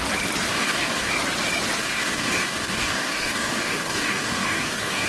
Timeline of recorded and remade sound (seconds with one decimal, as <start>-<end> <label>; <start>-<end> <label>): 0.0-0.5 recorded; 0.5-1.1 remade; 1.1-1.8 recorded; 1.8-5.1 remade